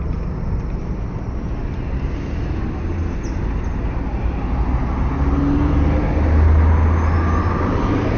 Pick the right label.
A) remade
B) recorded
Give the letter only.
B